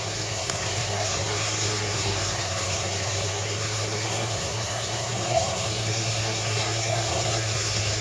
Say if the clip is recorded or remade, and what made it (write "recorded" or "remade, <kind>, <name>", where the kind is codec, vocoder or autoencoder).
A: remade, codec, SNAC